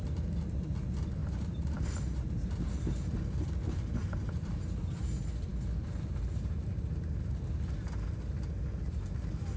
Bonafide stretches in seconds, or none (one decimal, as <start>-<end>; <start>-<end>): 0.0-1.2; 2.0-4.0; 4.9-9.6